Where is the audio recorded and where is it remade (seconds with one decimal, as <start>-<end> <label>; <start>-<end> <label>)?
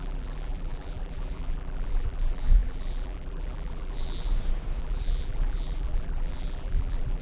0.0-4.3 remade; 4.3-4.8 recorded; 4.8-7.2 remade